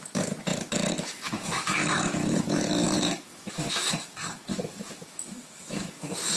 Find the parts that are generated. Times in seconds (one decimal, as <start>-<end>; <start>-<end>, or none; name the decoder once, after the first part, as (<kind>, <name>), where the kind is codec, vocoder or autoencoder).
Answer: 0.0-6.4 (autoencoder, DAC-VAE)